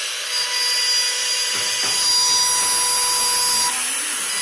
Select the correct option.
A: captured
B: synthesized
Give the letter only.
A